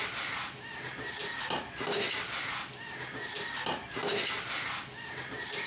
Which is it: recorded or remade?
recorded